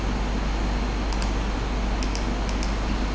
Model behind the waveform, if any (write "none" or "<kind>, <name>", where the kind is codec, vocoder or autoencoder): none